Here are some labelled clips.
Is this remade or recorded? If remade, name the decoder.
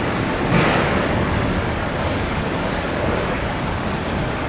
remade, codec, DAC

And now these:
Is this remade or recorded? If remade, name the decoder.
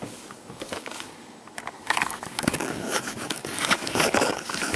remade, codec, DAC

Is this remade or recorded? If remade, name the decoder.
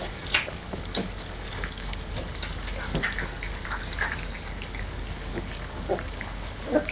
remade, codec, DAC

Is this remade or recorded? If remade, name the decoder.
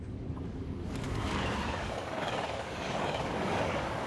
remade, codec, DAC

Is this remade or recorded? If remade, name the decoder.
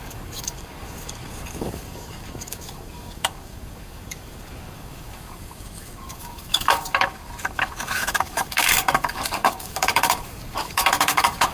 remade, codec, DAC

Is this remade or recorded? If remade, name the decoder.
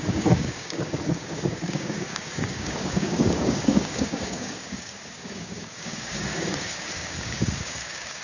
remade, codec, DAC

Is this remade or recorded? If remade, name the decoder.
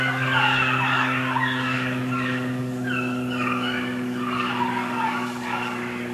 remade, codec, DAC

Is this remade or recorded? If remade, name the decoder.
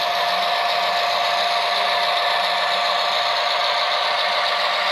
recorded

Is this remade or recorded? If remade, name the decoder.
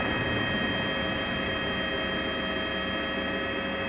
recorded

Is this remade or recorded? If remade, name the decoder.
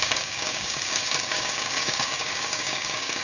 remade, codec, DAC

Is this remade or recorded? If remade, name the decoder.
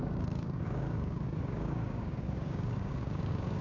remade, codec, DAC